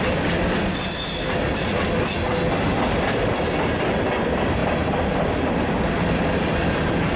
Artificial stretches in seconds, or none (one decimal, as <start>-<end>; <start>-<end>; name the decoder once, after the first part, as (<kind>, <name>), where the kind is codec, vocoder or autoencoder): none